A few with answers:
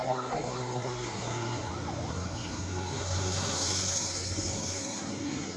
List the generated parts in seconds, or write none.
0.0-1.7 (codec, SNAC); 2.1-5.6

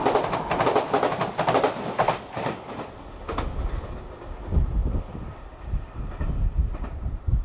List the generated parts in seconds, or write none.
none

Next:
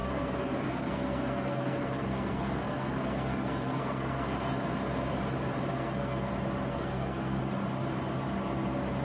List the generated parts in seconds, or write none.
0.0-4.5 (codec, SNAC); 5.7-6.3; 6.7-7.4

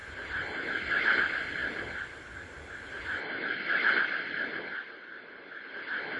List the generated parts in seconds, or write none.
none

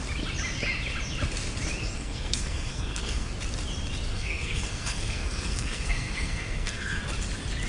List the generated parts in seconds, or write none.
1.8-3.3 (codec, SNAC); 4.1-7.0

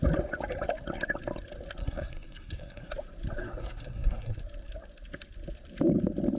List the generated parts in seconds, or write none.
1.8-2.9 (codec, SNAC); 3.4-4.4